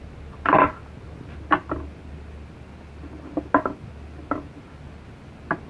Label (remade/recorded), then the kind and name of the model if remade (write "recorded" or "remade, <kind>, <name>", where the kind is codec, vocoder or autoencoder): recorded